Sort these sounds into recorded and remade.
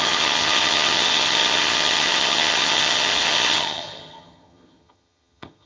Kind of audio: remade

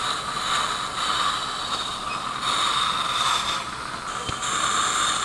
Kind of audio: recorded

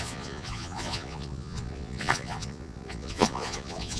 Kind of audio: remade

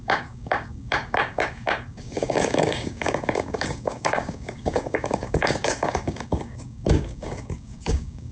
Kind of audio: remade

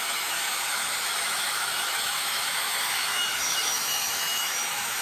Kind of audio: remade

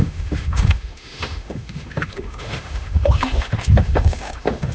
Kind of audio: remade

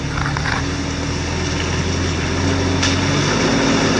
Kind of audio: recorded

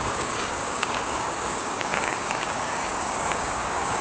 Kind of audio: remade